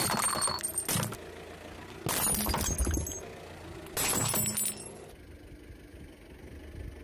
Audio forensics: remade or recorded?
recorded